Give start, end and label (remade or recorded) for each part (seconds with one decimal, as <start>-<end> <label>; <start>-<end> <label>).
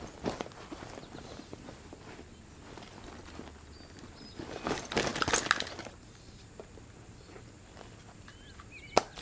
0.0-9.2 recorded